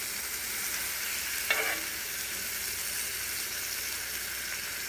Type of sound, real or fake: real